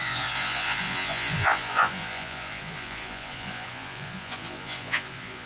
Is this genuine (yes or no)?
no